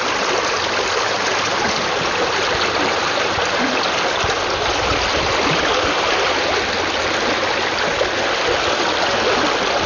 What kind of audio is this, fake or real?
real